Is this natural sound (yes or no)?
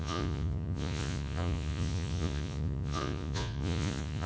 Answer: no